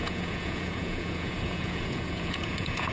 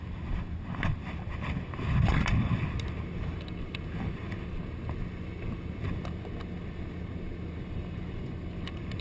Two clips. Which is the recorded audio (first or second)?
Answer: second